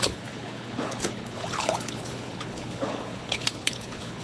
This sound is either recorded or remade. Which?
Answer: remade